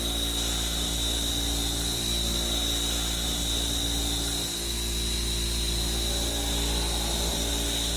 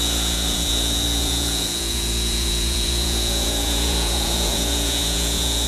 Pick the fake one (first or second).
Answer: second